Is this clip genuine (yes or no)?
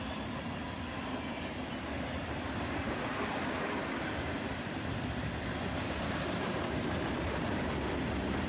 yes